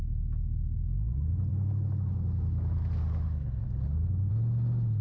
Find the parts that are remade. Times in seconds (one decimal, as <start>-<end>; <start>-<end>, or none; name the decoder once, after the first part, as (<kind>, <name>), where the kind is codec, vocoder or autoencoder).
none